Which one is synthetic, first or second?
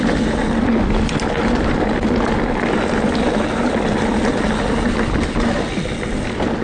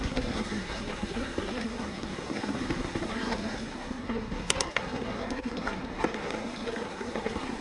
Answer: second